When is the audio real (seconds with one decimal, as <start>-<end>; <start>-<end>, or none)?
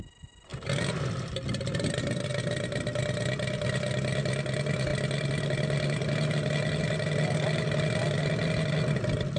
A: 0.0-9.4